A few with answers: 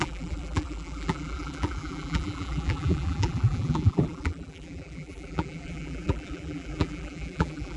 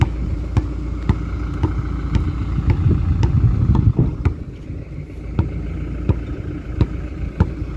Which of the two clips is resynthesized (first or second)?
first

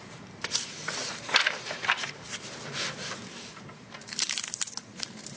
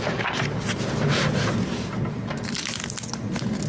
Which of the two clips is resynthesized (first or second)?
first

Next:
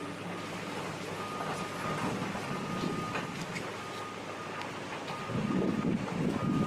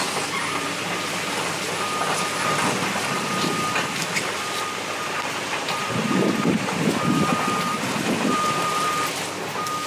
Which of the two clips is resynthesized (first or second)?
second